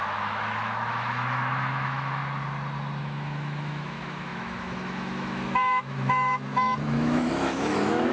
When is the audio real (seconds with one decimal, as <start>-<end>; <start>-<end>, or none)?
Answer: 2.2-3.0